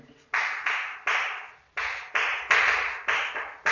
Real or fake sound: real